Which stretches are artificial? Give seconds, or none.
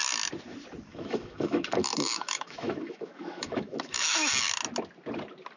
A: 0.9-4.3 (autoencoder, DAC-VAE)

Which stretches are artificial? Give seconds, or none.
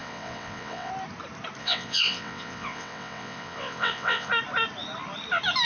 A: 0.0-0.9 (vocoder, WaveNeXt); 1.6-4.3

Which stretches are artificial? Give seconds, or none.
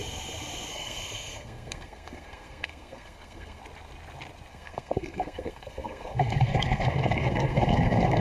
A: 0.7-3.6 (codec, SNAC); 4.5-8.2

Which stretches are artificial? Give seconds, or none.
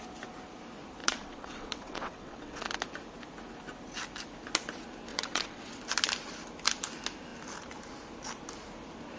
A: 1.0-2.6 (vocoder, WaveNeXt); 5.1-5.8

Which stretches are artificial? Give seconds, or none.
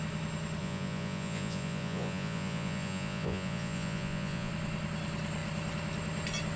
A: 0.6-4.5 (vocoder, Vocos)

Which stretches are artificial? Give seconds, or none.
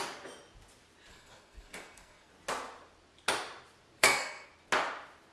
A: 1.1-2.3 (codec, SNAC); 4.0-4.5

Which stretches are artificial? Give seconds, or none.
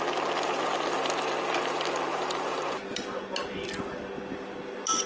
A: 2.1-2.8 (vocoder, BigVGAN v2)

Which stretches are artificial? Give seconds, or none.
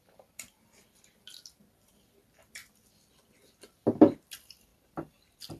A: 0.0-2.6 (vocoder, BigVGAN v2); 3.9-4.7